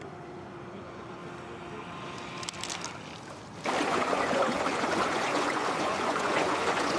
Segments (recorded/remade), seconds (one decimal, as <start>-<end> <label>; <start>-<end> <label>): 0.0-1.2 remade; 1.2-3.8 recorded; 3.8-7.0 remade